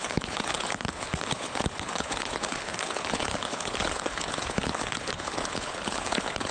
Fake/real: fake